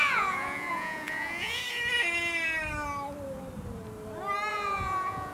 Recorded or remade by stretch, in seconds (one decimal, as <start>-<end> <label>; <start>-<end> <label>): 0.0-1.6 remade; 1.6-4.5 recorded; 4.5-5.3 remade